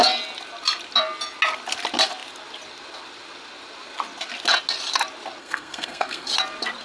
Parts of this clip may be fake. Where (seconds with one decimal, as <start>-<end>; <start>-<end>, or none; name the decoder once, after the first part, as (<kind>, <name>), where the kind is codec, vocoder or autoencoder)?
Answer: 5.4-6.3 (codec, SNAC)